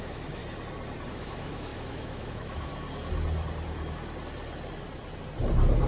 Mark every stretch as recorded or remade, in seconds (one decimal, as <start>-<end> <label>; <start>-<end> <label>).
0.0-0.4 remade; 0.4-1.1 recorded; 1.1-2.7 remade; 2.7-5.9 recorded